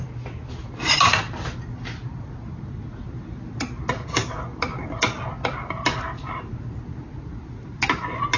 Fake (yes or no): no